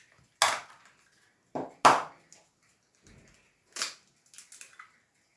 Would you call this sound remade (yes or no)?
no